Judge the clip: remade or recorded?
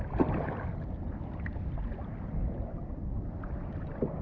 recorded